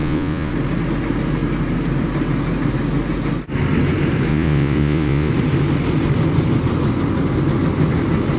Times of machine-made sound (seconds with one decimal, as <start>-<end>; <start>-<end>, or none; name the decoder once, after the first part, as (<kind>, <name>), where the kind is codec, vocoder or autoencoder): 0.0-0.5 (vocoder, Vocos); 4.3-5.3